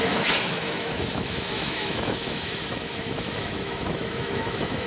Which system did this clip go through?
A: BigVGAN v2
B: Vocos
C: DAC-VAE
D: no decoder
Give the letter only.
C